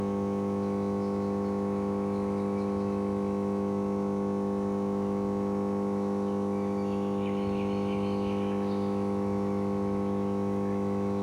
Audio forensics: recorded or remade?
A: remade